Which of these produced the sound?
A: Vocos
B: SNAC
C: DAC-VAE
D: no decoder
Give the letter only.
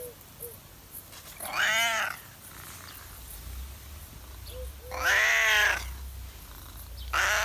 D